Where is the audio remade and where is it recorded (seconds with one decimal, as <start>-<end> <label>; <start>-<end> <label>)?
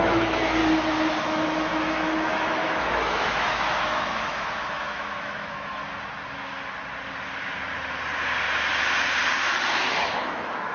0.0-0.6 remade; 0.6-1.2 recorded; 1.2-5.8 remade; 5.8-9.6 recorded; 9.6-10.7 remade